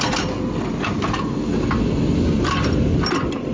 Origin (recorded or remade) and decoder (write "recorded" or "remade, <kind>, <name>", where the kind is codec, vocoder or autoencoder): recorded